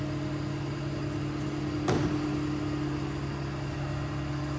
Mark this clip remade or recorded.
recorded